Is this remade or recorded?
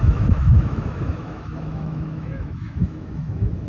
remade